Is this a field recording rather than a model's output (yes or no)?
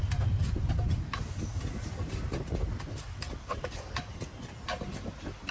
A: yes